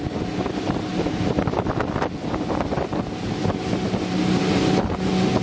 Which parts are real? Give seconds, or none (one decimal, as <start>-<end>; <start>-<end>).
0.0-5.4

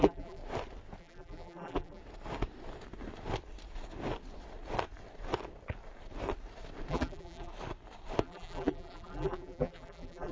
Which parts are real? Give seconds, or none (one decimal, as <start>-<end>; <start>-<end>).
0.4-1.0; 2.0-6.9; 7.5-8.2

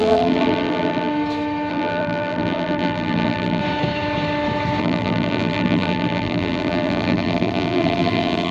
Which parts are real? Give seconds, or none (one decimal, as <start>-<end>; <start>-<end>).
1.1-1.7; 3.6-4.8

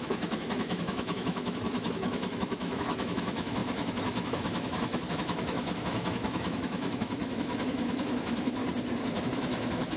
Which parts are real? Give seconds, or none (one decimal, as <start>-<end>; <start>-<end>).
8.6-9.2

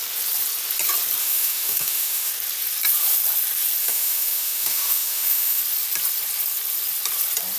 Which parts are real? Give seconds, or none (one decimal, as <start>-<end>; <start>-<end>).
0.0-1.2; 2.3-3.8; 5.6-7.6

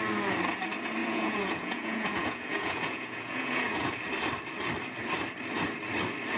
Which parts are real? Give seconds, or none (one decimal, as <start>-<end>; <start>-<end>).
0.0-1.0; 3.9-6.4

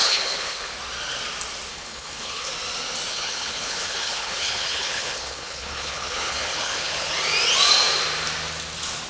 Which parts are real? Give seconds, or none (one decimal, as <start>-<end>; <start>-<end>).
0.7-1.7; 2.5-3.1; 7.1-9.1